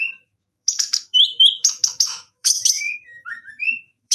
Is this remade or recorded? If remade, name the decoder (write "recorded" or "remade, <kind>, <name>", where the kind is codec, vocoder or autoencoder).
remade, autoencoder, DAC-VAE